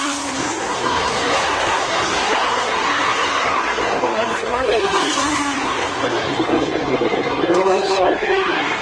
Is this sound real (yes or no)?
no